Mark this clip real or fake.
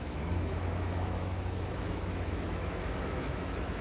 fake